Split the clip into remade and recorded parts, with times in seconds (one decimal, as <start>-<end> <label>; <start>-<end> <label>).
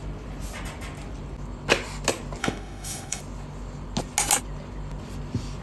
0.0-2.4 recorded; 2.4-3.2 remade; 3.2-5.6 recorded